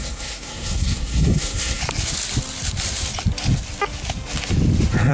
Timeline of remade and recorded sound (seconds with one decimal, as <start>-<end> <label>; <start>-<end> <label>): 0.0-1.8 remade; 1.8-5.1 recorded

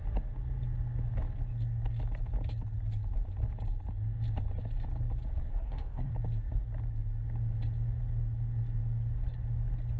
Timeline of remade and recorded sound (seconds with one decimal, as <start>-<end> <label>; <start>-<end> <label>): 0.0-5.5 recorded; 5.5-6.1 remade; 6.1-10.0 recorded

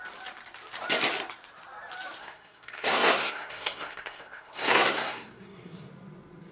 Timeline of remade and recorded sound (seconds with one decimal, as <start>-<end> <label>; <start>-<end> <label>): 0.0-2.2 recorded; 2.2-5.9 remade; 5.9-6.5 recorded